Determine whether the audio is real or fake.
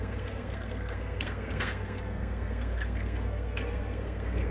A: fake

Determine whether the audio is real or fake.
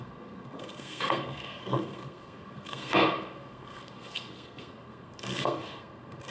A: fake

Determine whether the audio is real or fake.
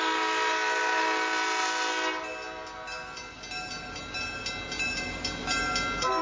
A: real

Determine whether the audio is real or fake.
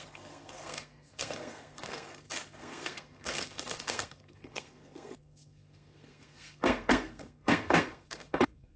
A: fake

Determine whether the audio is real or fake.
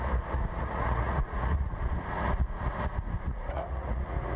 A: fake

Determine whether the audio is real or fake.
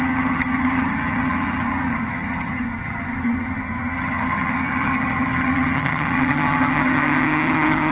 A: fake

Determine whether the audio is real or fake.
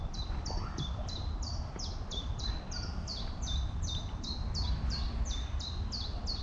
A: fake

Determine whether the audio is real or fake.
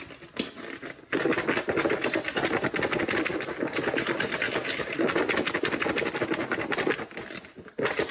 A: real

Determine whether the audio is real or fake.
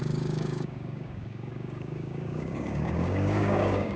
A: fake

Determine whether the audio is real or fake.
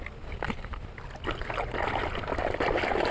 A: real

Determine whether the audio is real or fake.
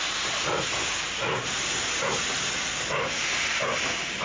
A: real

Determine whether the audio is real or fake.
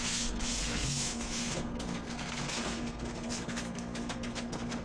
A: fake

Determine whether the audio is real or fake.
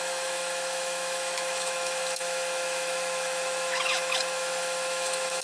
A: fake